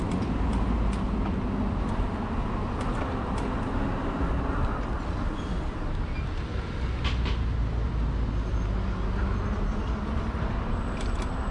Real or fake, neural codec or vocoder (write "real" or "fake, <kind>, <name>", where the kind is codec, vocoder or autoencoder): real